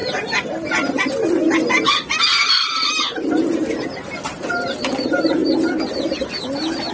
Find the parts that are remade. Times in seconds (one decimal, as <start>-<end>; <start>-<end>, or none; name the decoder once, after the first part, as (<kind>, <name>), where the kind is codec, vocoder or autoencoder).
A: 0.0-1.9 (vocoder, BigVGAN v2)